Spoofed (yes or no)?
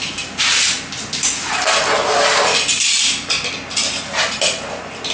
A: no